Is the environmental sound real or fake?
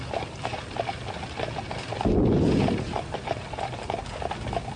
real